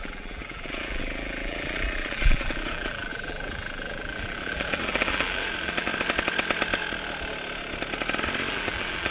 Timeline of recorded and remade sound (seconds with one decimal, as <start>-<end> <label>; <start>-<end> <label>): 0.0-5.9 remade; 5.9-8.5 recorded; 8.5-9.1 remade